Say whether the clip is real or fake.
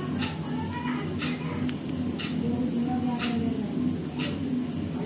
real